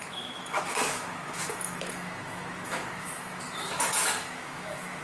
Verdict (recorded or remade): remade